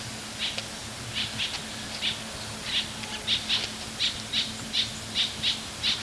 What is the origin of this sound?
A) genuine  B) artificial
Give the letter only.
A